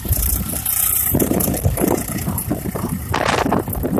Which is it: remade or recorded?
remade